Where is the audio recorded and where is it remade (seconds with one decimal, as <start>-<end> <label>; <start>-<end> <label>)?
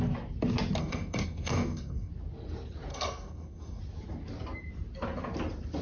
0.0-0.8 recorded; 0.8-2.1 remade; 2.1-2.9 recorded; 2.9-3.8 remade; 3.8-5.8 recorded